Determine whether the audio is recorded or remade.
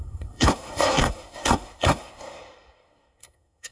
remade